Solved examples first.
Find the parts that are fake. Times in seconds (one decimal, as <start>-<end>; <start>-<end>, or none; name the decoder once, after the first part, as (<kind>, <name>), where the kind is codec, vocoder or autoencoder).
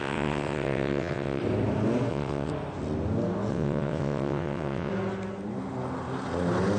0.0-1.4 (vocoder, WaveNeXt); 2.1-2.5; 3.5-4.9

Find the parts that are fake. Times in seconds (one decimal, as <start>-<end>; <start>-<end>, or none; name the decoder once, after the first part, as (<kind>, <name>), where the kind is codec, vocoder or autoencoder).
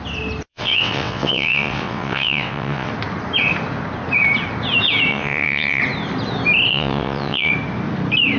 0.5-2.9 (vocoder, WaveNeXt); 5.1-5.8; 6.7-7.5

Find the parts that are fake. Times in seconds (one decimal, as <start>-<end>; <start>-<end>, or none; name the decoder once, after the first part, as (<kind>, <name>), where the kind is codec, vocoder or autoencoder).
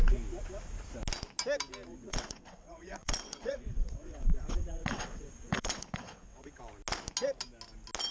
1.9-6.6 (vocoder, WaveNeXt)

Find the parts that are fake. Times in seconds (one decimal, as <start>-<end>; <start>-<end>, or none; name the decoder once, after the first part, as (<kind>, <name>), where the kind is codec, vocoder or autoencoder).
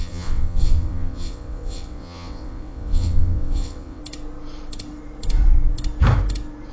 0.0-4.0 (vocoder, WaveNeXt)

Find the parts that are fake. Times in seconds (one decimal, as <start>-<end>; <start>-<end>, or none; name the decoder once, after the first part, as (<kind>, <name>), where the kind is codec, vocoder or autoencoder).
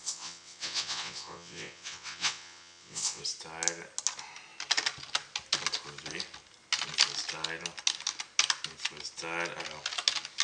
0.0-3.2 (vocoder, WaveNeXt)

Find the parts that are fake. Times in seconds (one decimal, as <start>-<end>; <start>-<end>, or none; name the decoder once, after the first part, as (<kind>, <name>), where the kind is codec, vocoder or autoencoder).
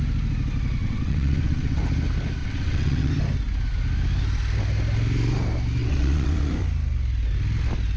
0.8-1.8 (vocoder, WaveNeXt); 2.4-3.1; 5.8-6.5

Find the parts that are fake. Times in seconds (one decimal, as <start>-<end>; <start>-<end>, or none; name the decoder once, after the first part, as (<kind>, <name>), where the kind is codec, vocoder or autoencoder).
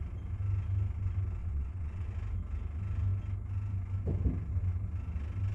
1.4-2.1 (vocoder, WaveNeXt)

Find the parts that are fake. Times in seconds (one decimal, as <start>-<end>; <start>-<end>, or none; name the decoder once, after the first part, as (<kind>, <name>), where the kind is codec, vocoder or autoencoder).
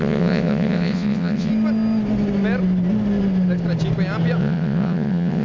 0.0-1.5 (vocoder, WaveNeXt); 4.4-5.4